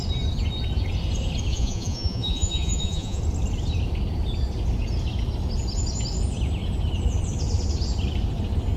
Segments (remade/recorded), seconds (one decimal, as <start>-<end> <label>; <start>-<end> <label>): 0.0-1.5 recorded; 1.5-3.2 remade; 3.2-8.8 recorded